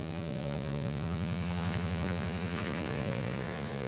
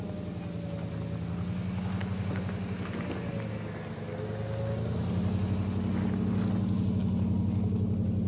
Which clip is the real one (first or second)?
second